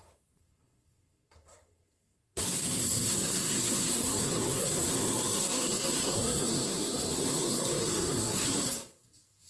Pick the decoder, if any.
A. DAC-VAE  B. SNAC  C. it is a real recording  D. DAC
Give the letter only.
B